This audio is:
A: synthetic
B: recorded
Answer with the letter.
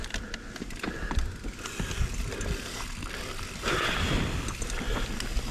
B